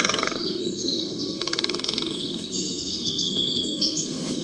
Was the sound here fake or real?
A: fake